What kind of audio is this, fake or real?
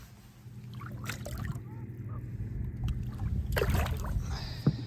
real